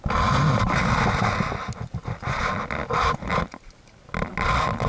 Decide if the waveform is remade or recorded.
recorded